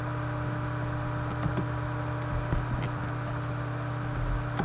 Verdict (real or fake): real